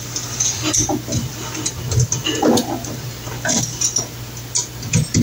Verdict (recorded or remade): recorded